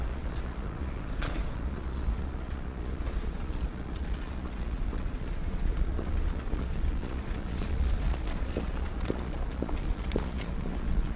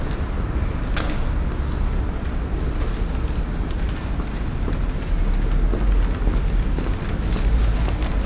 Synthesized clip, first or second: first